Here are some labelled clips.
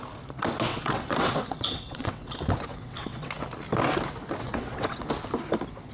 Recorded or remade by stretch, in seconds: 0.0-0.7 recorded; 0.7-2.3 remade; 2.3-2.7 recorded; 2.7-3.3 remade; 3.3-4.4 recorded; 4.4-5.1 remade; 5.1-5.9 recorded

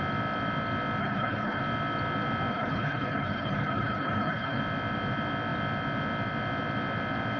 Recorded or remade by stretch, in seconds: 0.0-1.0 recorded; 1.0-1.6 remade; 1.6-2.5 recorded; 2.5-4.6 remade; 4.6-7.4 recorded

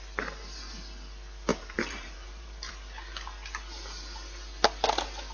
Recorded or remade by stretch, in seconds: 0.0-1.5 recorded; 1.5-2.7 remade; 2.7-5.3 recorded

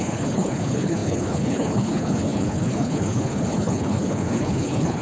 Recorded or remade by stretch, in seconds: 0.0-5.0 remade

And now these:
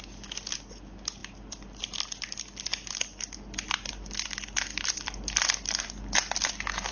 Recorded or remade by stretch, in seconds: 0.0-1.2 recorded; 1.2-3.9 remade; 3.9-4.7 recorded; 4.7-5.8 remade; 5.8-6.9 recorded